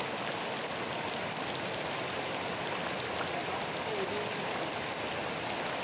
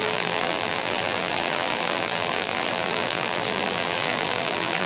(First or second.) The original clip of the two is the first